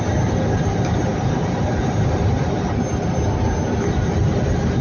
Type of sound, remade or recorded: recorded